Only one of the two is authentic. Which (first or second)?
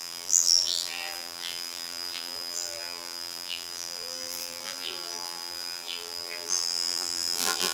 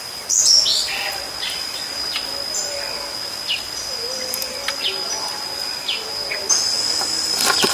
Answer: second